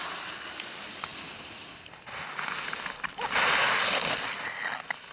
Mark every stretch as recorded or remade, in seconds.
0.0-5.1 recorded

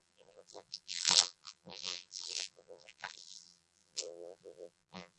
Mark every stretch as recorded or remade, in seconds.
0.0-5.2 remade

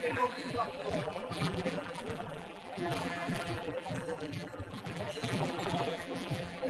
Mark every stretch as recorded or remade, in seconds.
0.0-6.7 remade

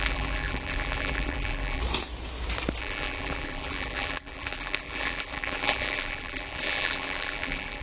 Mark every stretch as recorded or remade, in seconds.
0.0-1.8 remade; 1.8-2.8 recorded; 2.8-7.8 remade

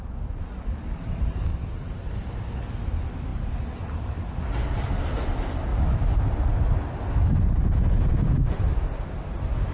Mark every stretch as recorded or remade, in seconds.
0.0-1.5 recorded; 1.5-2.1 remade; 2.1-3.3 recorded; 3.3-4.1 remade; 4.1-9.7 recorded

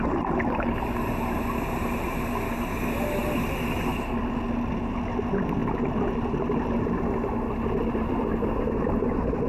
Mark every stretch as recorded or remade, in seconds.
0.0-9.5 recorded

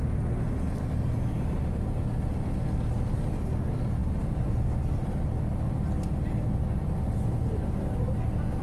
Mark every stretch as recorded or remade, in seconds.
0.0-8.6 recorded